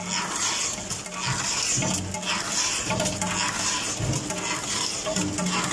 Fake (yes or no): no